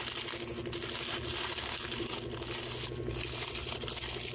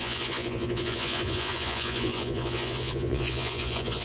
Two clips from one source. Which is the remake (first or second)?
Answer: second